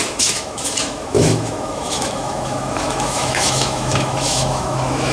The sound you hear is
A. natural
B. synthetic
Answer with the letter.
B